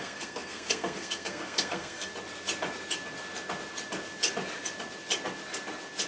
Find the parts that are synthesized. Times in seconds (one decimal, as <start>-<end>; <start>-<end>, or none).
0.0-2.1